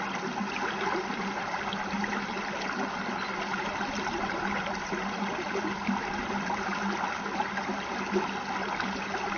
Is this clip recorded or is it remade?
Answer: recorded